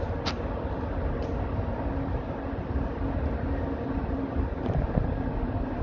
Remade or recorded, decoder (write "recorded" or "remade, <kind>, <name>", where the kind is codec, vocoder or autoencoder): recorded